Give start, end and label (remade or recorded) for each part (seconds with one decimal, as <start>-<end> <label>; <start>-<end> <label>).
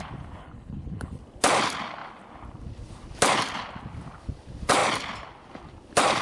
0.0-0.4 recorded; 0.4-1.2 remade; 1.2-6.2 recorded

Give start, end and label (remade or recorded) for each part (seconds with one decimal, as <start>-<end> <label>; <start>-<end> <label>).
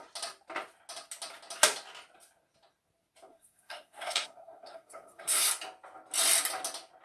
0.0-3.3 recorded; 3.3-5.5 remade; 5.5-7.0 recorded